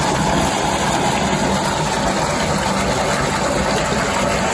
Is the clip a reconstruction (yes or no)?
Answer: no